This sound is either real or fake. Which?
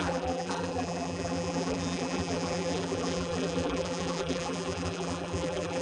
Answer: fake